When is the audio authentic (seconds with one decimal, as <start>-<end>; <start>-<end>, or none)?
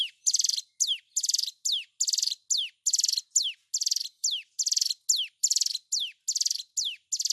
0.0-7.3